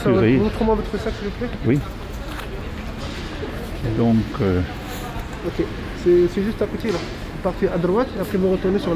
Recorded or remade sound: recorded